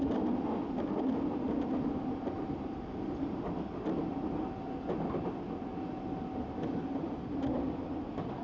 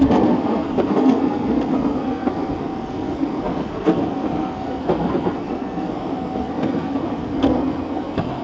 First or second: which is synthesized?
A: second